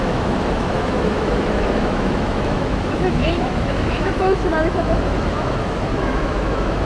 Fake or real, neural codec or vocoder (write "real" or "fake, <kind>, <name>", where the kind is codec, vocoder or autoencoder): fake, autoencoder, DAC-VAE